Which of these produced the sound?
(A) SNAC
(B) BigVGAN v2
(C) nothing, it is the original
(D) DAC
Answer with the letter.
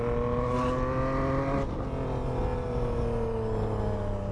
C